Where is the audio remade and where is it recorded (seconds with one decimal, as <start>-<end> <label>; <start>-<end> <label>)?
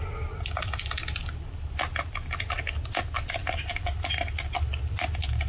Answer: 0.0-5.5 recorded